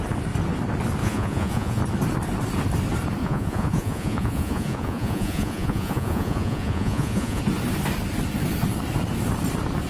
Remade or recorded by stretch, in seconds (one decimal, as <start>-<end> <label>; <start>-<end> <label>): 0.0-1.0 recorded; 1.0-1.8 remade; 1.8-3.2 recorded; 3.2-7.4 remade; 7.4-9.9 recorded